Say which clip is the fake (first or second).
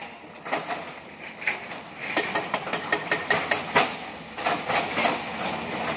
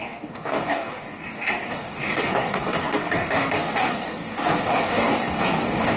second